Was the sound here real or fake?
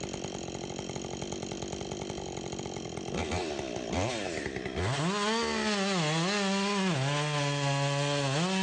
real